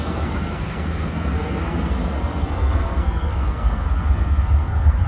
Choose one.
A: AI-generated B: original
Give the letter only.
A